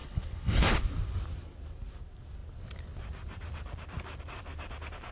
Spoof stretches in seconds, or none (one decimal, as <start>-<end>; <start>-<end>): 0.0-0.6